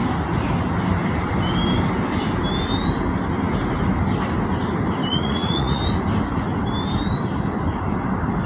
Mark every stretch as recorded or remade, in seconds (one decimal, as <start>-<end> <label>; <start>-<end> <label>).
0.0-5.1 recorded; 5.1-5.8 remade; 5.8-8.5 recorded